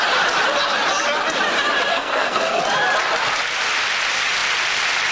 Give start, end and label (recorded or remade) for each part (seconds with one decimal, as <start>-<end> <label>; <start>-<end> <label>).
0.0-1.9 recorded; 1.9-2.6 remade; 2.6-5.1 recorded